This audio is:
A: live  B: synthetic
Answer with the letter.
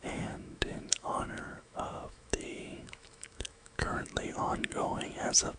B